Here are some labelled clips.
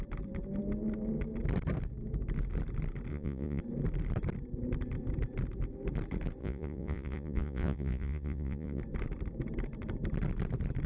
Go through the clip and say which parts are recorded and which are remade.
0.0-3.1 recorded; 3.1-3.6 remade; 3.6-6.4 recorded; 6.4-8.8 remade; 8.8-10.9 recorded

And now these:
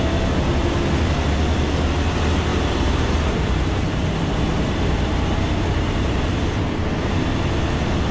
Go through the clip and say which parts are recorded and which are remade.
0.0-2.5 recorded; 2.5-7.1 remade; 7.1-8.1 recorded

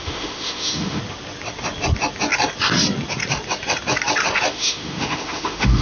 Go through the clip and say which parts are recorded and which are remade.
0.0-1.0 remade; 1.0-4.5 recorded; 4.5-5.8 remade

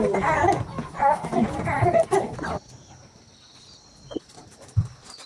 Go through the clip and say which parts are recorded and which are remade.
0.0-5.3 recorded

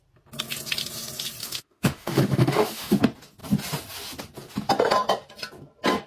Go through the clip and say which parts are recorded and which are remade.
0.0-1.4 recorded; 1.4-3.0 remade; 3.0-6.1 recorded

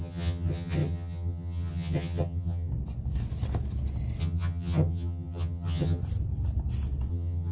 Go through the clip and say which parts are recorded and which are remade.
0.0-2.7 remade; 2.7-4.2 recorded; 4.2-6.0 remade; 6.0-7.1 recorded; 7.1-7.5 remade